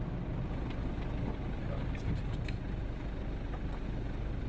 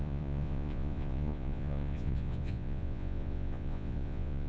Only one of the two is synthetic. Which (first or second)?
second